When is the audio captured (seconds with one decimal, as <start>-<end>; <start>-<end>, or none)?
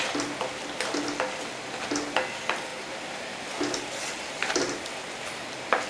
0.0-5.9